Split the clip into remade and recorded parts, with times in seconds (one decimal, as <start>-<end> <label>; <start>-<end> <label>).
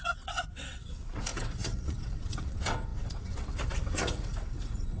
0.0-5.0 remade